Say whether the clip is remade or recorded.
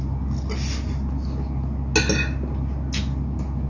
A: recorded